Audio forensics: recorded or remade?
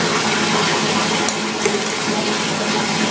recorded